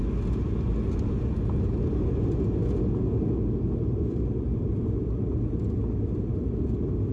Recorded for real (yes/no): yes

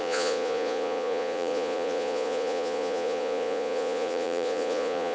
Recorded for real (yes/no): no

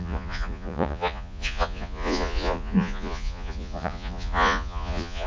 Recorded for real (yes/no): no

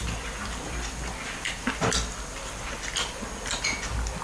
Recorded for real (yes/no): yes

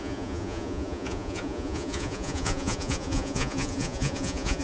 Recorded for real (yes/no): no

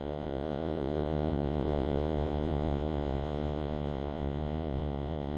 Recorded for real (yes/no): no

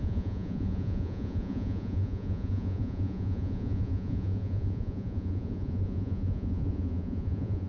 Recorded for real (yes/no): no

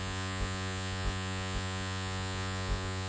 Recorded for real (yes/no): no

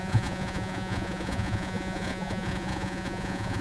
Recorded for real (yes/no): no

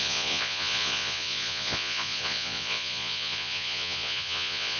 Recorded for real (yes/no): no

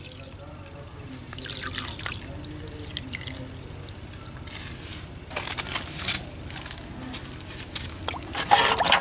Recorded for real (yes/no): yes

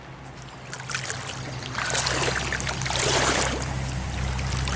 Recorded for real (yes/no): yes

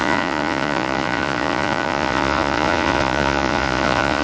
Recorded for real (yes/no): no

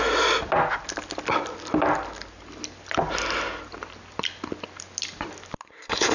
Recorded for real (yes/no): yes